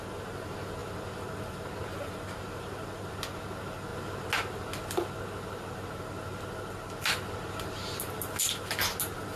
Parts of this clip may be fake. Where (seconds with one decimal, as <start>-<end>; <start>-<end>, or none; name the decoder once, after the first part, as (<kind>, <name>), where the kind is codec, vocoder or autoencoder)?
none